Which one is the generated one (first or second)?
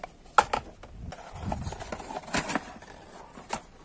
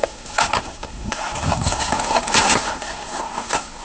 second